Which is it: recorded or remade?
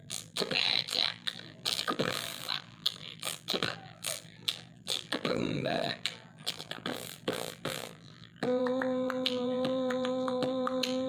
remade